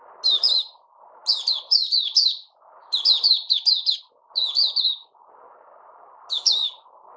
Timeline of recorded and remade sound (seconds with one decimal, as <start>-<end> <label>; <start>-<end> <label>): 0.0-7.2 recorded